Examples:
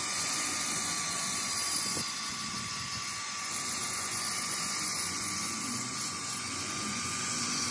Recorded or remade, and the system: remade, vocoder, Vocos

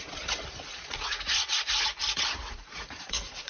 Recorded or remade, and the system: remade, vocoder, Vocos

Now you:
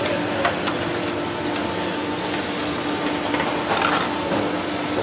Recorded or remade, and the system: recorded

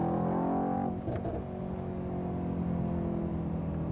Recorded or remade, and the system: recorded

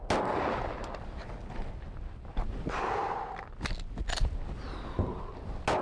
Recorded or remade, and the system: recorded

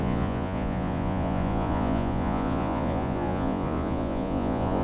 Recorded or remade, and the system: remade, vocoder, Vocos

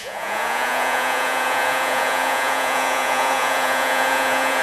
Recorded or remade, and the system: remade, vocoder, Vocos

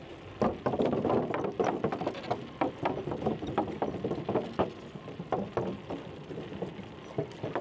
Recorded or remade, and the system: recorded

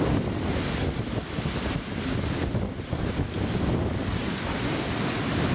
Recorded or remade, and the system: recorded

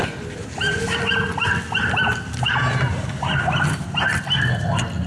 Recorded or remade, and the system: recorded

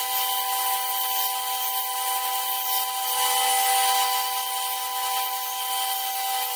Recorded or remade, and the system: recorded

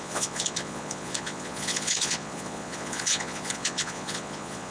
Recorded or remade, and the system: remade, vocoder, Vocos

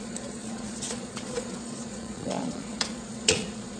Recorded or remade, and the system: remade, vocoder, Vocos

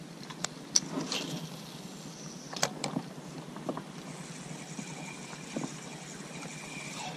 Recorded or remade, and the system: recorded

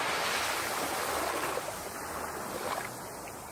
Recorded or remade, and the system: recorded